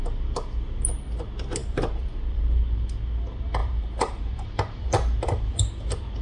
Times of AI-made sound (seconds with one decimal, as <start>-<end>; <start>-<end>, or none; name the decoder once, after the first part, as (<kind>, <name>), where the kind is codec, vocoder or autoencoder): 1.6-2.6 (vocoder, BigVGAN v2); 3.6-5.7